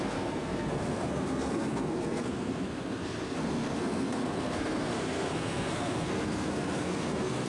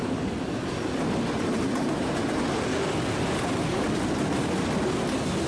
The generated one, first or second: first